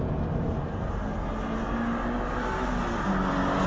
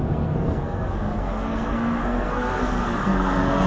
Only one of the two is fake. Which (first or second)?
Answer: second